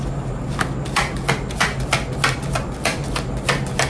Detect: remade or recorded recorded